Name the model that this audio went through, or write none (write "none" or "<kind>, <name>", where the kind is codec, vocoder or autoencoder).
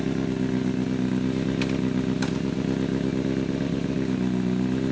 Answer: none